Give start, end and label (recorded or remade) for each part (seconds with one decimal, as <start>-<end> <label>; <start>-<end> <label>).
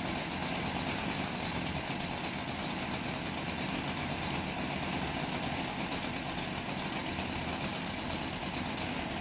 0.0-9.2 recorded